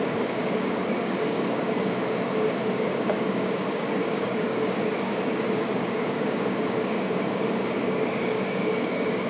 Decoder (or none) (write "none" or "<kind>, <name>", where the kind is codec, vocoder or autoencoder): codec, DAC